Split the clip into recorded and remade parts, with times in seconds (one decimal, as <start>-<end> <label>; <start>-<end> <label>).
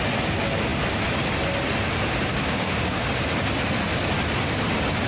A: 0.0-2.3 recorded; 2.3-3.1 remade; 3.1-5.1 recorded